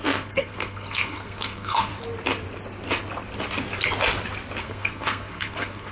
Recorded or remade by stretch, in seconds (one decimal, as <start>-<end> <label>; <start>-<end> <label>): 0.0-1.9 remade; 1.9-4.6 recorded; 4.6-5.9 remade